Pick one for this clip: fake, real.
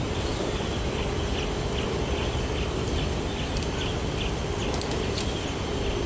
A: real